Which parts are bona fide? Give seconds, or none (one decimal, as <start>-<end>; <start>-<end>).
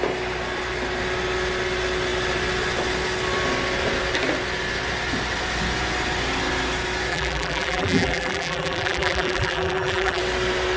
0.0-7.1; 10.2-10.8